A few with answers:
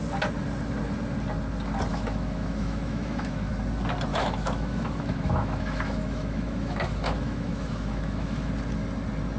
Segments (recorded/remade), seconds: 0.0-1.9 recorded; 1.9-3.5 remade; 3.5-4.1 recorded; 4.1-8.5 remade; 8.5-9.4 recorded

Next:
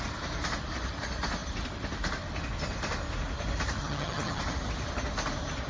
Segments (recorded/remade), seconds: 0.0-3.8 recorded; 3.8-4.4 remade; 4.4-5.7 recorded

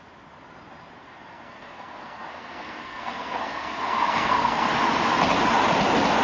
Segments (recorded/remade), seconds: 0.0-1.0 recorded; 1.0-4.7 remade; 4.7-6.2 recorded